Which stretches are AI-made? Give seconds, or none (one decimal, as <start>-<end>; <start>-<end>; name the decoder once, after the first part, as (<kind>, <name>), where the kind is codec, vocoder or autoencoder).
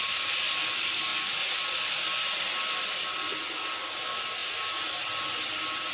none